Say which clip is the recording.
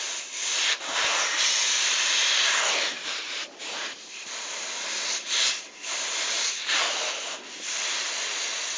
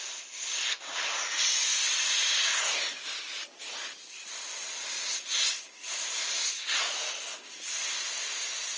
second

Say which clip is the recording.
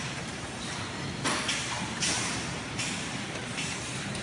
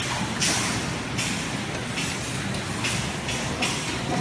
second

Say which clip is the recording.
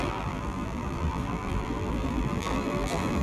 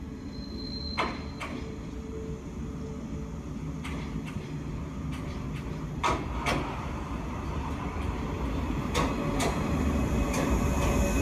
second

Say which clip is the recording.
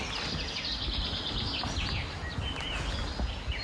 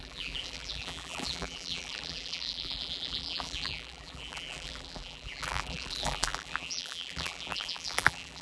first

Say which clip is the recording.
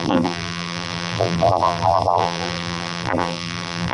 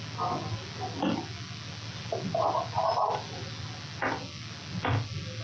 second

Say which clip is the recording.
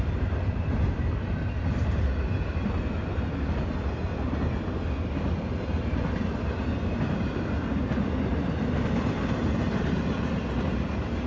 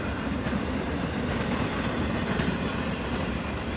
first